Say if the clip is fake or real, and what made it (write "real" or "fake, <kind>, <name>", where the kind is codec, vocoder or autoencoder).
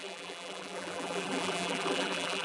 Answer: fake, vocoder, BigVGAN v2